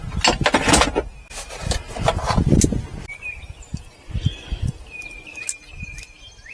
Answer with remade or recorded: recorded